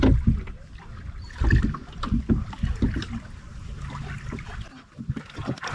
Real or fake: real